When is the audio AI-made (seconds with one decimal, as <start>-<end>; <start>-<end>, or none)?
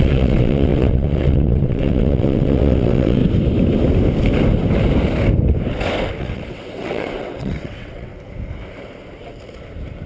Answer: 0.0-3.2; 6.2-8.1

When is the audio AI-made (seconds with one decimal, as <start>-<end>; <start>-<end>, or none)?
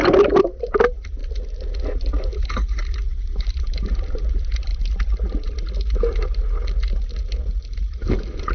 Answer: 0.0-1.2; 2.4-4.7; 7.6-8.5